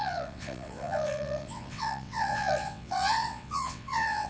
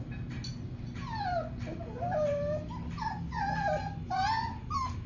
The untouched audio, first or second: second